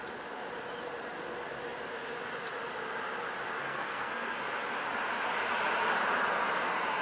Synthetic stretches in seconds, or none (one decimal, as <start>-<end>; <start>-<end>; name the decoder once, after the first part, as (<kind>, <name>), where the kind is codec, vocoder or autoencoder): 3.6-4.4 (codec, SNAC)